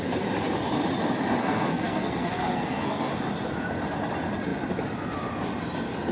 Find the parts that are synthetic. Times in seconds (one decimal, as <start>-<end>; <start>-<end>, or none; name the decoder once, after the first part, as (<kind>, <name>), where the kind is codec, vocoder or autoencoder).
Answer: 1.4-3.1 (codec, SNAC)